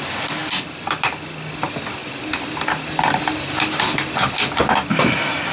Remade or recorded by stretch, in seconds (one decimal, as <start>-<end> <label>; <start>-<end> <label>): 0.0-5.5 recorded